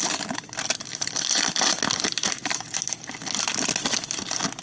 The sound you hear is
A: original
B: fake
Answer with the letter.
A